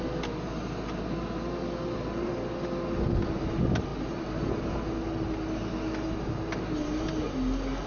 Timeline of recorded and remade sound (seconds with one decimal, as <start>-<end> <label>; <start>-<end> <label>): 0.0-7.9 recorded